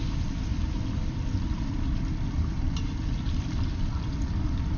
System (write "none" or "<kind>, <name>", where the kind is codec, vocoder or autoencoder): vocoder, BigVGAN v2